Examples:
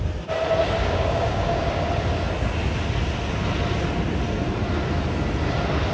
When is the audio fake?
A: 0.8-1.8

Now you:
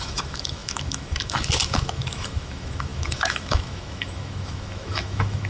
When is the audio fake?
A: 0.0-5.5

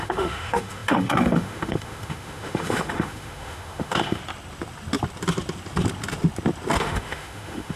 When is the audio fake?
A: 0.0-4.2; 6.8-7.8

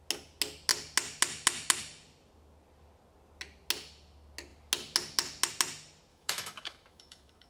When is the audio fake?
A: 6.1-7.5

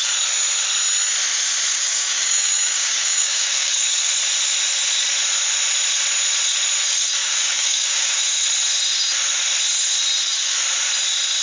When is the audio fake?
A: 1.7-4.1; 7.2-8.2

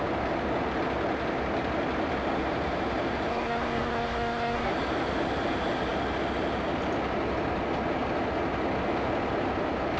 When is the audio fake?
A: 3.3-4.7

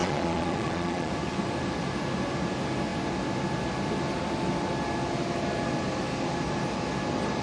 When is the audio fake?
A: 0.0-1.1

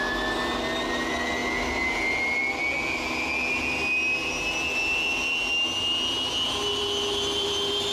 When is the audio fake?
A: none